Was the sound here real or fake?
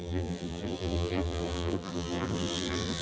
fake